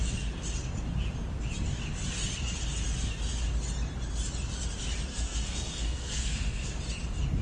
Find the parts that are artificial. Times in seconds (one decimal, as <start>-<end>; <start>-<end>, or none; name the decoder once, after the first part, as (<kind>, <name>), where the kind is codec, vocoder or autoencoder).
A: 5.1-6.7 (codec, SNAC)